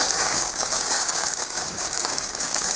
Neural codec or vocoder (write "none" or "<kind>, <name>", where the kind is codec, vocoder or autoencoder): codec, DAC